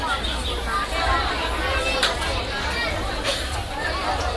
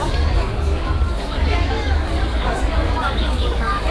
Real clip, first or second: first